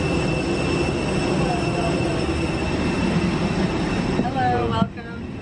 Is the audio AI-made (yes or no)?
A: no